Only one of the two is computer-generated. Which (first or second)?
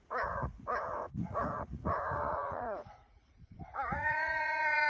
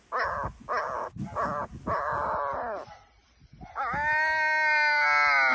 first